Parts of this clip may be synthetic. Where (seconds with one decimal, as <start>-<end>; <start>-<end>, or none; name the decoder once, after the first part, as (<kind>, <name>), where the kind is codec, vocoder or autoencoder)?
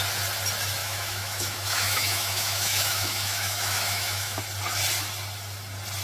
0.8-4.4 (autoencoder, DAC-VAE)